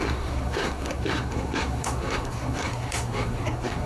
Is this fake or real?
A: fake